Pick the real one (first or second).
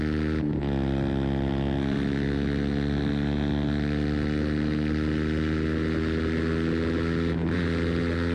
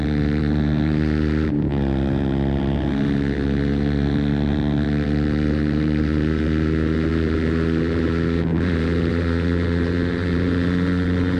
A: first